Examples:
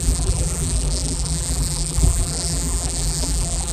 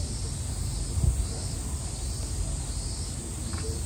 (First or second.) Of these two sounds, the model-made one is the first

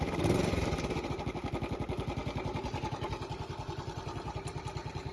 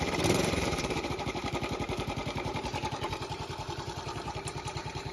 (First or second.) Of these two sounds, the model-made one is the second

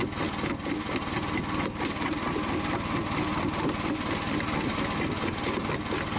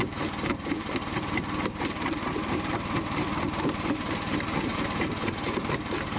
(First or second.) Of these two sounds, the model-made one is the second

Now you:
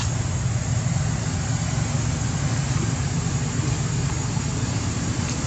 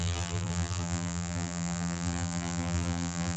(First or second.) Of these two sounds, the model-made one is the second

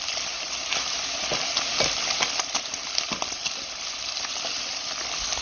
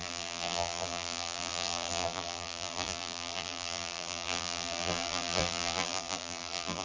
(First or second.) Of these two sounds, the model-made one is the second